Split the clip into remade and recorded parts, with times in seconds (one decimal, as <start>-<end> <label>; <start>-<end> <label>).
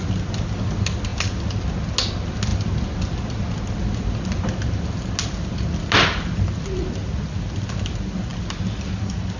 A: 0.0-9.4 recorded